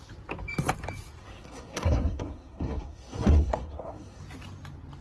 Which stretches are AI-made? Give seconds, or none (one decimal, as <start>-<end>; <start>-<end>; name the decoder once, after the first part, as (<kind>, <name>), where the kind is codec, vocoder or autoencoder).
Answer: 1.2-4.2 (codec, SNAC)